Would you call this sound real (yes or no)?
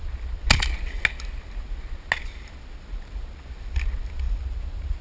yes